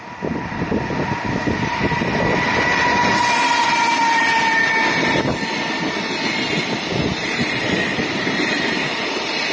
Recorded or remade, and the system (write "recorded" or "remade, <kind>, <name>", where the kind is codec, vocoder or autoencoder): recorded